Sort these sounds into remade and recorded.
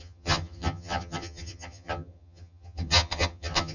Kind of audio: remade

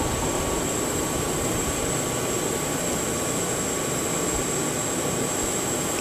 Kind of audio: recorded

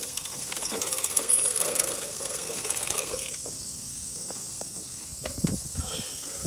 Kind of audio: remade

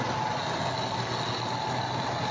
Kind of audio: recorded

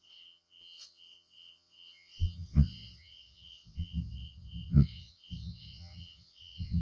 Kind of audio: remade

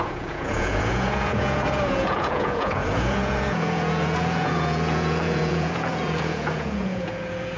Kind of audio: remade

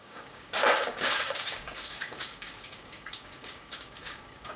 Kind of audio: remade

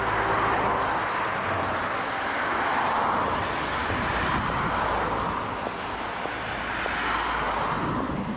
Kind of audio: recorded